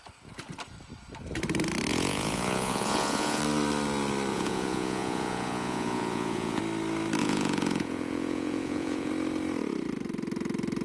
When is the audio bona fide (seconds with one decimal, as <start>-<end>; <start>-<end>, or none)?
0.0-1.9; 3.4-4.3; 6.6-7.2; 9.1-10.8